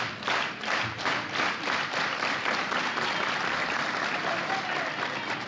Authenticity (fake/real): real